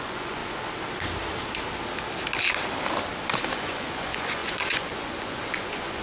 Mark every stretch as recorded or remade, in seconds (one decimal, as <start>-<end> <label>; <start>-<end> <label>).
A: 0.0-0.4 remade; 0.4-3.5 recorded; 3.5-6.0 remade